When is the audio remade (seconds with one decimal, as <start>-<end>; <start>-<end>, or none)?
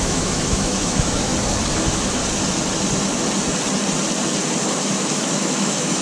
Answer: 0.0-1.3; 1.8-2.2; 4.7-6.0